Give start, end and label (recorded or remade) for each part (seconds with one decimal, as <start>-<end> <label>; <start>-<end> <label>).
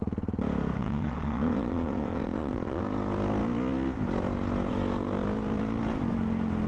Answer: 0.0-0.8 recorded; 0.8-2.8 remade; 2.8-6.7 recorded